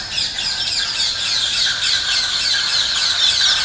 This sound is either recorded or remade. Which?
recorded